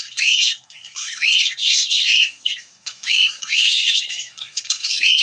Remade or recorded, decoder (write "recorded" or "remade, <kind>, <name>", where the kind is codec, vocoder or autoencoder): remade, codec, SNAC